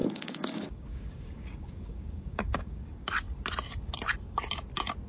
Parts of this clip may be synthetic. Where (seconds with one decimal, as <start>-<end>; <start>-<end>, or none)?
0.0-3.1